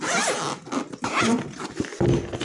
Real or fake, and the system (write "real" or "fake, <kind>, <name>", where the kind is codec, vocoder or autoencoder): real